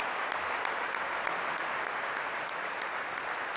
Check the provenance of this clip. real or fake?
real